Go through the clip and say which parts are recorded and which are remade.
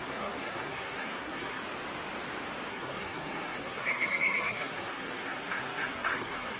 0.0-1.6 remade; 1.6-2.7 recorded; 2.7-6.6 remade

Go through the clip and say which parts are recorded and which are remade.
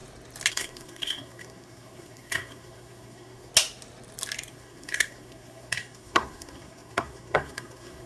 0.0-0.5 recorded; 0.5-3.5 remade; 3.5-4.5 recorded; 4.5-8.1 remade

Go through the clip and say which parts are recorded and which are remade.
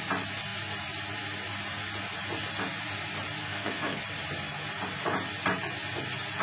0.0-3.4 recorded; 3.4-4.0 remade; 4.0-6.4 recorded